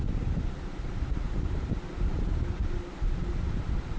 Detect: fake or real real